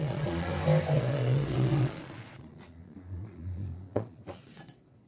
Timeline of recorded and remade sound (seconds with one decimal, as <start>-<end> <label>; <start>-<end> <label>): 0.0-0.5 remade; 0.5-1.0 recorded; 1.0-5.1 remade